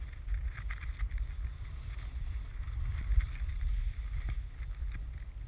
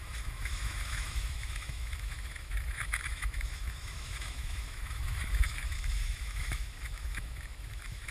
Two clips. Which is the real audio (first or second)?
first